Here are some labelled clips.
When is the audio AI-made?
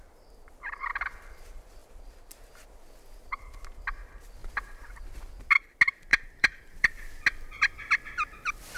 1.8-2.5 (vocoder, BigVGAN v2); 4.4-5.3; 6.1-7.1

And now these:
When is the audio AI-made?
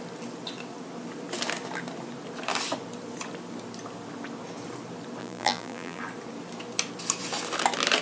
5.2-6.0 (vocoder, BigVGAN v2)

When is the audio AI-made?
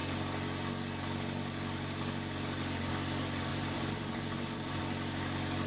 3.5-4.8 (vocoder, BigVGAN v2)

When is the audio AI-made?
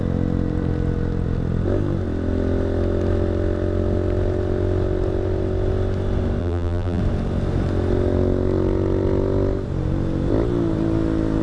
6.4-7.0 (vocoder, BigVGAN v2)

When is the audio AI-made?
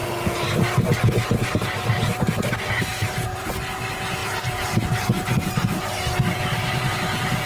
2.9-3.5 (vocoder, BigVGAN v2); 4.2-5.8